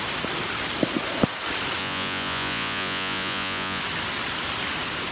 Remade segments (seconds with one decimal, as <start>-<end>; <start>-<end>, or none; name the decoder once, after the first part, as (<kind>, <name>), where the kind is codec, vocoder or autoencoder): 1.8-3.8 (vocoder, Vocos)